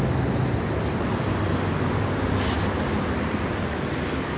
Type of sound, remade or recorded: recorded